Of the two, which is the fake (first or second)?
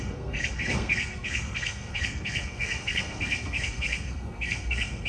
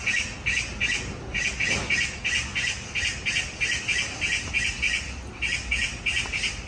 first